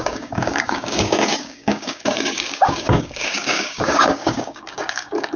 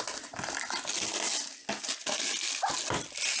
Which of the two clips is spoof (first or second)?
first